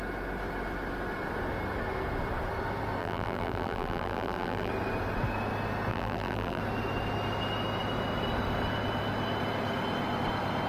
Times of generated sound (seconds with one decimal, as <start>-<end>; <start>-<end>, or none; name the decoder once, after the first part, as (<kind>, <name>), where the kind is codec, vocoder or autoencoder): 3.0-4.7 (vocoder, BigVGAN v2); 5.9-6.6